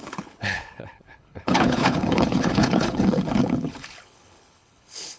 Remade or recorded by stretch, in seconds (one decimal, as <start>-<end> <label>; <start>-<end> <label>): 0.0-5.2 remade